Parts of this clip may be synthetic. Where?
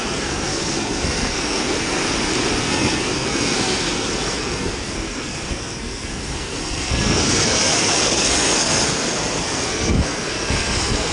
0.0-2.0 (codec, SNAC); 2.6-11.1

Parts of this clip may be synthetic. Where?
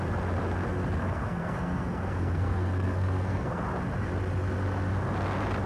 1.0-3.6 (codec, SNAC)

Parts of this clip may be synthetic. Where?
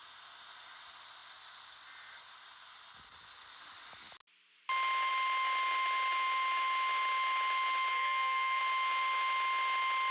7.9-8.6 (codec, SNAC)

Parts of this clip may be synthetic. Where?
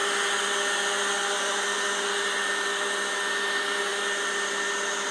none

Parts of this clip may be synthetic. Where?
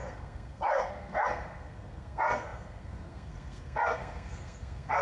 0.0-5.0 (codec, SNAC)